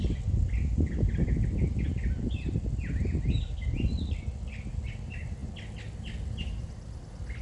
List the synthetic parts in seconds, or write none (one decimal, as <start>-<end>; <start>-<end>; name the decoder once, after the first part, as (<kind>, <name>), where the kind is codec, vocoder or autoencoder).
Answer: none